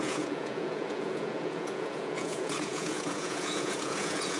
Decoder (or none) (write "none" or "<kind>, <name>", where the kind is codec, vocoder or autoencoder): vocoder, Vocos